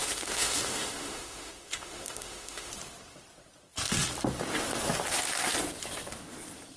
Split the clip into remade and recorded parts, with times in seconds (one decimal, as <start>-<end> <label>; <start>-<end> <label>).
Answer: 0.0-2.7 remade; 2.7-6.8 recorded

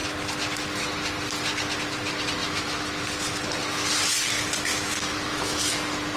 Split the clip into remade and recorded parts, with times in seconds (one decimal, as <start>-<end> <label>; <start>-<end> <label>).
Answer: 0.0-2.4 recorded; 2.4-3.0 remade; 3.0-4.7 recorded; 4.7-5.7 remade; 5.7-6.2 recorded